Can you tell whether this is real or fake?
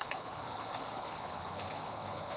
fake